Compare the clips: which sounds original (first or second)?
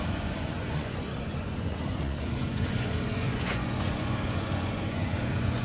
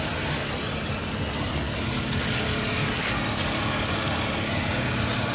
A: second